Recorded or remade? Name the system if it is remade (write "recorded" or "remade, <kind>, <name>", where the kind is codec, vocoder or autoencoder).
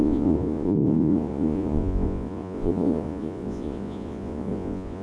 remade, vocoder, Vocos